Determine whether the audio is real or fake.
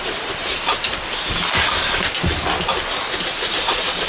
real